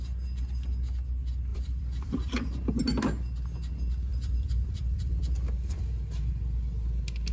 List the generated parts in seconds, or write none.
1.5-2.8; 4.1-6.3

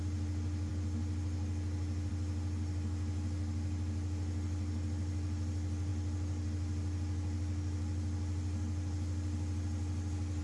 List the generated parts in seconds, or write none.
none

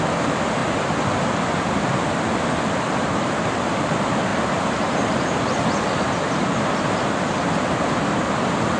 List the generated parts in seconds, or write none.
4.3-5.6

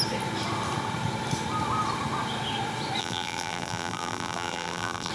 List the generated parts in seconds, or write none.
3.0-5.1

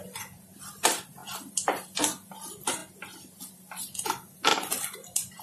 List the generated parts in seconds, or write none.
0.0-2.8; 3.5-5.4